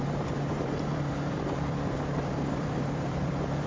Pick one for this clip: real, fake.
fake